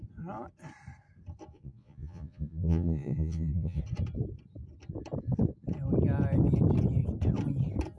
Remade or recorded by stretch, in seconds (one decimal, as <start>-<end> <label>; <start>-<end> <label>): 0.0-1.5 recorded; 1.5-3.8 remade; 3.8-8.0 recorded